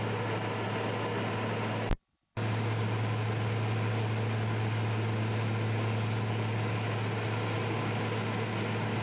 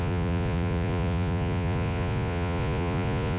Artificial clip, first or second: second